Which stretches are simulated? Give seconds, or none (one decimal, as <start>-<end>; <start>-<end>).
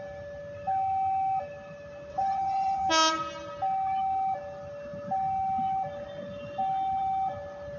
2.1-2.9